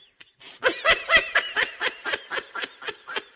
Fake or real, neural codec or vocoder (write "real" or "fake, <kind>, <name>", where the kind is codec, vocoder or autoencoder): fake, vocoder, BigVGAN v2